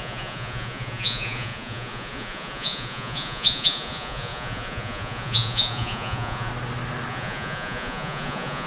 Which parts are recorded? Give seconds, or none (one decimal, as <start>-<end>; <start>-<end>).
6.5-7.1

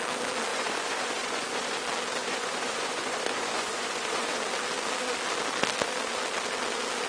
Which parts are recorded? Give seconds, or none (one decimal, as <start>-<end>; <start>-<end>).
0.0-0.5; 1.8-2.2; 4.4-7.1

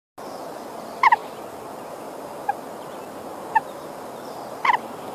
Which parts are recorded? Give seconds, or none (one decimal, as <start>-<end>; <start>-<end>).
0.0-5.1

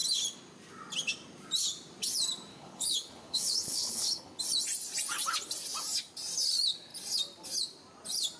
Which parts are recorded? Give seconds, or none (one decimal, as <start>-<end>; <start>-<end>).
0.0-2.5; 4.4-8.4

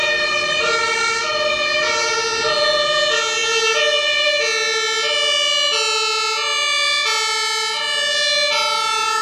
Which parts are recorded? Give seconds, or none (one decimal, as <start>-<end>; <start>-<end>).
1.5-9.2

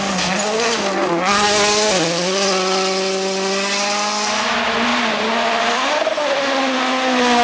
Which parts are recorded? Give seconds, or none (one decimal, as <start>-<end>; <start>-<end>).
0.0-7.4

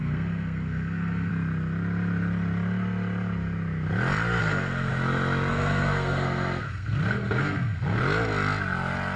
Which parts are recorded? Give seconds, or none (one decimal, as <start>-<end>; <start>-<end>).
1.3-4.4; 4.9-5.5; 8.0-9.2